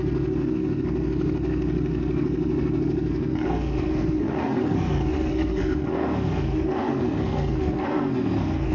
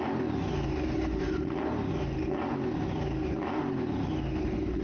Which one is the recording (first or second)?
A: second